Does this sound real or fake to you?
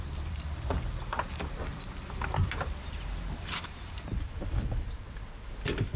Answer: fake